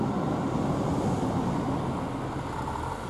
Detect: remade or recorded recorded